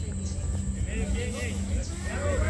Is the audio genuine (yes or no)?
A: yes